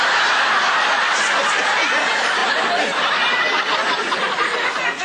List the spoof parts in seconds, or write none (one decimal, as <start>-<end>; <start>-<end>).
none